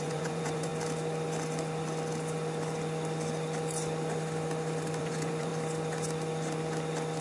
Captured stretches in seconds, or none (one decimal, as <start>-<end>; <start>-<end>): 0.7-5.0; 5.5-7.2